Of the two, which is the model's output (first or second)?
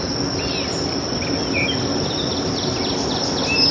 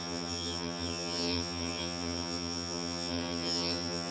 second